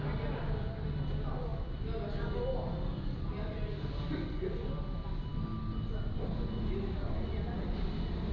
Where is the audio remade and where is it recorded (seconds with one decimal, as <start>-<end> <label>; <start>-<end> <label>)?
0.0-8.3 recorded